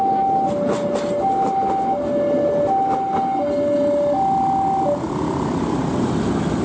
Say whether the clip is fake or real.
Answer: real